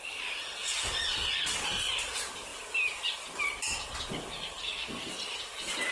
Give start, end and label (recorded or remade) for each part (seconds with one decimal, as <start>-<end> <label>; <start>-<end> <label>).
0.0-4.6 recorded; 4.6-5.1 remade; 5.1-5.9 recorded